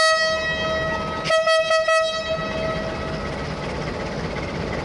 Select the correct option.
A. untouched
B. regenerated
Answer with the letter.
A